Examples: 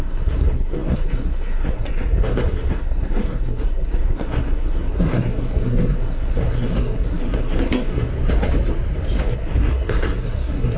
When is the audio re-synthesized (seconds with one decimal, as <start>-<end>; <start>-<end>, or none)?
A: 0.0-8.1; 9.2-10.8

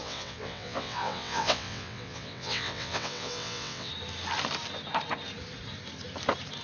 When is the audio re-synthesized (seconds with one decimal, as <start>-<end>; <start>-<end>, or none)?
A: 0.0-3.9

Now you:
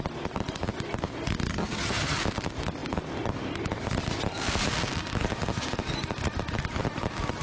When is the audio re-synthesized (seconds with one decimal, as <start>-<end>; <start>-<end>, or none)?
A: 1.5-2.2

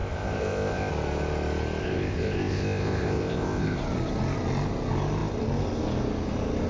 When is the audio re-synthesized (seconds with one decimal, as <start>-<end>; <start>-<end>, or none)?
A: 0.0-0.9; 1.8-3.8